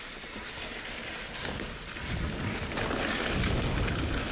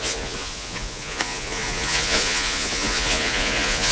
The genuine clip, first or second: first